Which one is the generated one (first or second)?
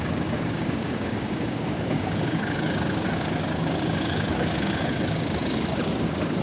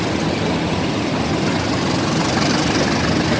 first